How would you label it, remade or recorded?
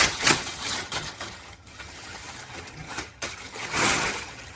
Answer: remade